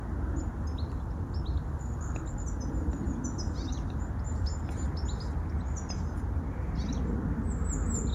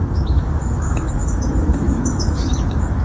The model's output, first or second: second